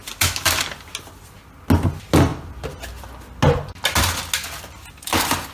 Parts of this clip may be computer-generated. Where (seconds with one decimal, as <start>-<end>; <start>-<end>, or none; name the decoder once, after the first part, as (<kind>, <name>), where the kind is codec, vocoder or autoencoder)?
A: none